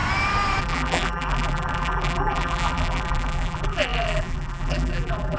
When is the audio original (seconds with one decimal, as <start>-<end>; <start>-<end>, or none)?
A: 0.0-0.6